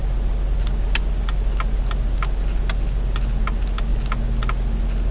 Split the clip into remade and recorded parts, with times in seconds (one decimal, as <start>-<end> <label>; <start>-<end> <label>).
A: 0.0-5.1 recorded